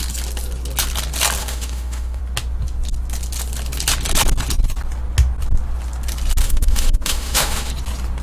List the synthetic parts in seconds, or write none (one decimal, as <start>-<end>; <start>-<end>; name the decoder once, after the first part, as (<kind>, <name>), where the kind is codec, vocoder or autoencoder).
1.4-2.2 (autoencoder, DAC-VAE); 6.4-7.7